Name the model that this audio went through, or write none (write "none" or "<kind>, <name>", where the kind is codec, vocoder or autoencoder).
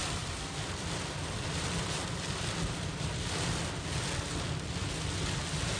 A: none